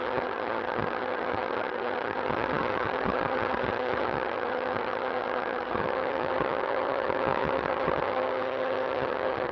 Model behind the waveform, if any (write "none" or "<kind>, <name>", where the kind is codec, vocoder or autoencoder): vocoder, HiFi-GAN